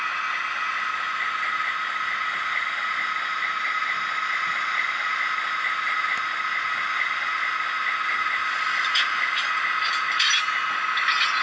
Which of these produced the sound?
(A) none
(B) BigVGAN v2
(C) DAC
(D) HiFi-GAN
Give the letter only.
A